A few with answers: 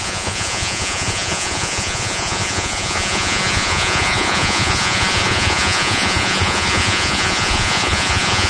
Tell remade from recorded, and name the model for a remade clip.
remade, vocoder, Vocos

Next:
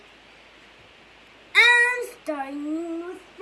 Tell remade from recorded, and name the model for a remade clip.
recorded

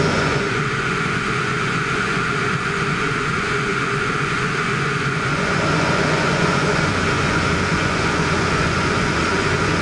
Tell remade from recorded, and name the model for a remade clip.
remade, vocoder, Vocos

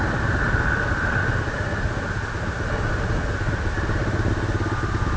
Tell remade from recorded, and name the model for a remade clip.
recorded